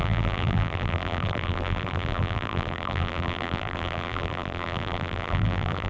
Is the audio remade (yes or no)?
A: yes